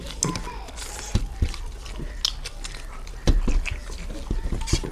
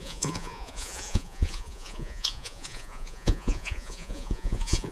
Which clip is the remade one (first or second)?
second